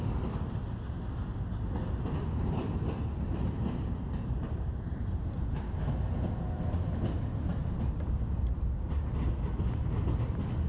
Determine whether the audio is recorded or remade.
recorded